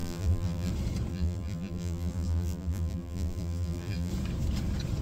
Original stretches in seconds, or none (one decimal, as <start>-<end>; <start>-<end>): 0.7-1.1; 4.1-5.0